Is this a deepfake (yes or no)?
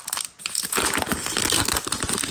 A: no